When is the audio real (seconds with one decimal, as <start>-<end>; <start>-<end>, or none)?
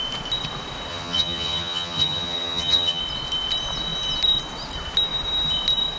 0.0-0.9; 3.0-6.0